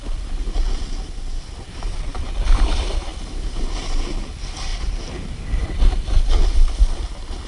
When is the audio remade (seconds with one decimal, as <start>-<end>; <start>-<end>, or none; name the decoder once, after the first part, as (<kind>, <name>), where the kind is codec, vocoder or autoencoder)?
4.7-5.4 (vocoder, BigVGAN v2)